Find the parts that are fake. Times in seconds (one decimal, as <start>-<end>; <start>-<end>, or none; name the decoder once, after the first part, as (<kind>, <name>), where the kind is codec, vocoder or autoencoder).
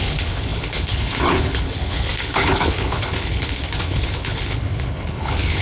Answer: 0.0-5.6 (codec, HILCodec)